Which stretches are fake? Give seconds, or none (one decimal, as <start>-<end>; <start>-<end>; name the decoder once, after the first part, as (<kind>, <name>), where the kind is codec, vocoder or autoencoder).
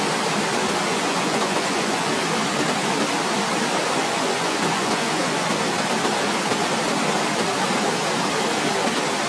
0.9-2.1 (vocoder, Vocos); 4.0-5.5